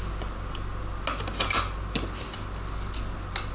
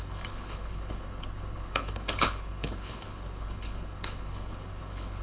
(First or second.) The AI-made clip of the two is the second